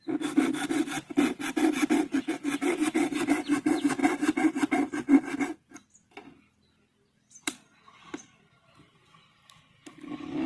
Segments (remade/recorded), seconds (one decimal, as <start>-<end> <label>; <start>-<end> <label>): 0.0-10.5 recorded